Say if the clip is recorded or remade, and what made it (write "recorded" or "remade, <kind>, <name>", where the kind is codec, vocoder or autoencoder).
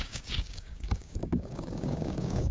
remade, codec, DAC